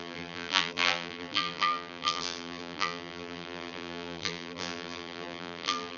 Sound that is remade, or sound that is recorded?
remade